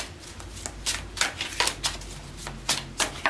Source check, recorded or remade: recorded